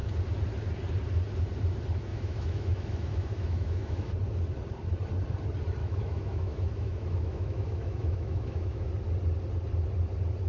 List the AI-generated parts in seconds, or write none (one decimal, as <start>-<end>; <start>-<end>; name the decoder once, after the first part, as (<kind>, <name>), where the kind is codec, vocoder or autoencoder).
2.1-4.1 (autoencoder, DAC-VAE); 5.8-8.9